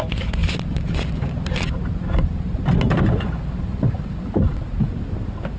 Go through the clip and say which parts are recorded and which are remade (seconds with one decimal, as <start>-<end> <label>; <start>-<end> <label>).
0.0-5.6 recorded